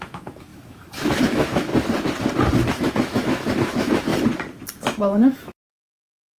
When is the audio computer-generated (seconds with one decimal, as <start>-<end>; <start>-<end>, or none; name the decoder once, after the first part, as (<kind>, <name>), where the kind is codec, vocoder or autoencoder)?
0.0-1.7 (autoencoder, DAC-VAE); 2.7-4.1; 4.7-6.4